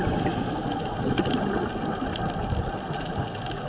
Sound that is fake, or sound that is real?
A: real